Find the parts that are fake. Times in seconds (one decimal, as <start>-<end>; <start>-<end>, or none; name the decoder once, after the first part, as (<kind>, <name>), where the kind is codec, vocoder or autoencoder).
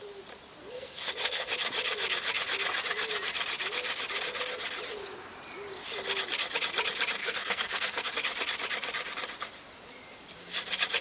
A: 0.6-1.5 (codec, SNAC); 7.2-8.1